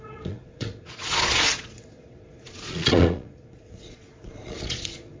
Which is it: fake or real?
fake